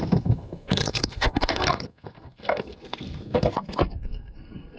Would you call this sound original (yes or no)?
no